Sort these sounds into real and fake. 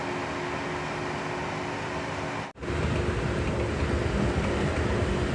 real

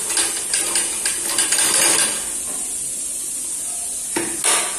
real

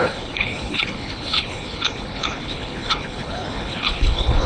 fake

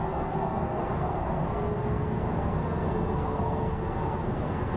fake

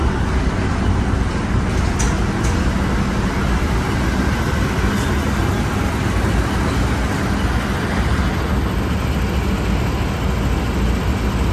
real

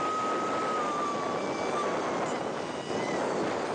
real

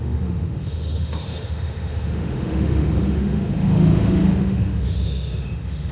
fake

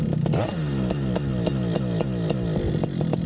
real